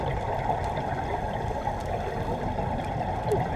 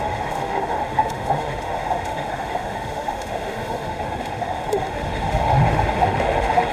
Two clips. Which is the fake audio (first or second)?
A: second